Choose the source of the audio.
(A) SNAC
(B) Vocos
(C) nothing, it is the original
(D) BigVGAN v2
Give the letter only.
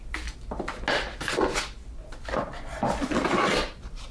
C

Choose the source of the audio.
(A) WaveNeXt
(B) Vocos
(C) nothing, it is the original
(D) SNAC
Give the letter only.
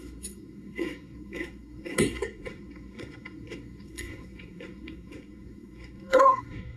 D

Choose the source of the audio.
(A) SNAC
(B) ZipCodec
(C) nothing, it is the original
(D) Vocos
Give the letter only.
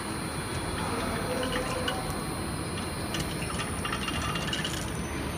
C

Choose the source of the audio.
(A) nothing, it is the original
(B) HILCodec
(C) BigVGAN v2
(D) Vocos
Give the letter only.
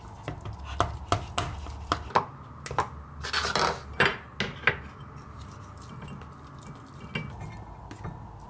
A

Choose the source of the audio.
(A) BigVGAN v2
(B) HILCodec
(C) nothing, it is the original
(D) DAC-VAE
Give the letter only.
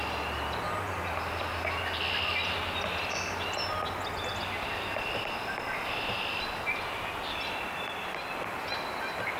C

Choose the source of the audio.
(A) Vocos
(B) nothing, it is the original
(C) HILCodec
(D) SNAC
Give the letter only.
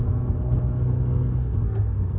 D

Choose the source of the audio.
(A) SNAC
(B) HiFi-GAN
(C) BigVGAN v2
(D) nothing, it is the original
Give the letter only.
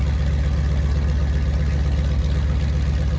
D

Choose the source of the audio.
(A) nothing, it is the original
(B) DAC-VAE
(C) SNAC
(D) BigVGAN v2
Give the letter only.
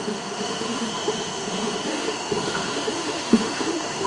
B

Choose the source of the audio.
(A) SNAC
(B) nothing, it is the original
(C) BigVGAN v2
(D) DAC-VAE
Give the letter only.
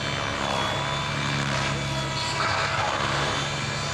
B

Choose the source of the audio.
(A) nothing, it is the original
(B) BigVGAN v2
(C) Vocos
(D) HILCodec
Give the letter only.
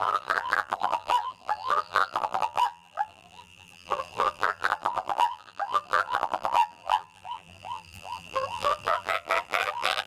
B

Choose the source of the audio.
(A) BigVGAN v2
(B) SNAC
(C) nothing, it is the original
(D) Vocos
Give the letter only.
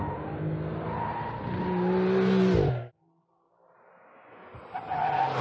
C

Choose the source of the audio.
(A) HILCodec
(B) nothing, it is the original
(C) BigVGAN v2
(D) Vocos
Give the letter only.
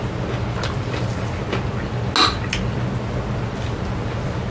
B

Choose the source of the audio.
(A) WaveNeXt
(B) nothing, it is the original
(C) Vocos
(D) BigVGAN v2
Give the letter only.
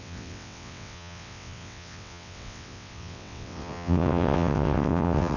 A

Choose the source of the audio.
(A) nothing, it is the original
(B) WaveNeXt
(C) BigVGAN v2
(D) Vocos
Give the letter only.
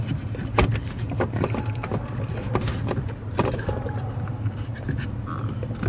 A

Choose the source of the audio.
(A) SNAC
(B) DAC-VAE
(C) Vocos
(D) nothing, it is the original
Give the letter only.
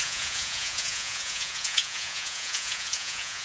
C